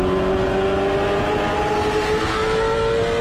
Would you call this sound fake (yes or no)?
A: no